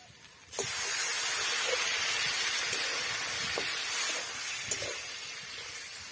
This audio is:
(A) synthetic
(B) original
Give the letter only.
B